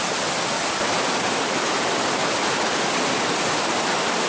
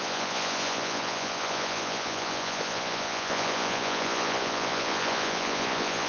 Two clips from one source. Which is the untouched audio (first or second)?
first